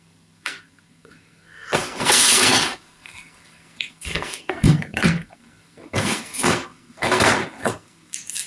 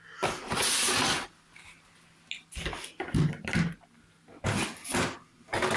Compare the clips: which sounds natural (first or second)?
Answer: second